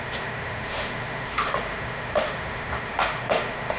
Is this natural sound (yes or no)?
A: no